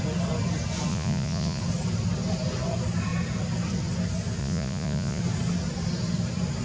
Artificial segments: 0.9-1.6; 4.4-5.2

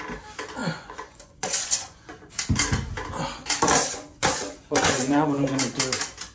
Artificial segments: 0.6-2.3; 3.8-5.4

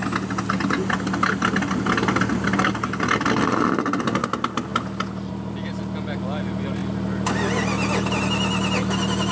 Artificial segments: none

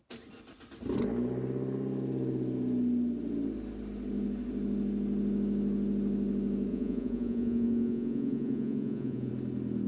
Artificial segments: 6.7-9.3

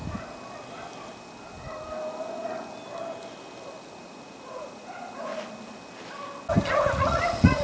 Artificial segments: 3.8-5.3; 6.7-7.6

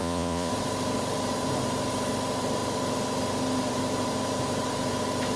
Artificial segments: 0.0-0.5

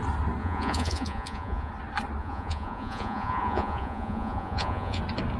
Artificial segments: 0.4-1.7; 2.2-5.0